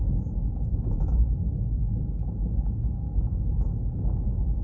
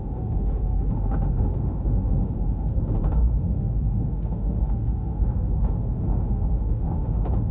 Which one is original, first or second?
first